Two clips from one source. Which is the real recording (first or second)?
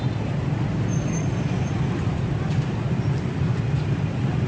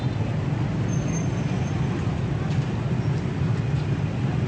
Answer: second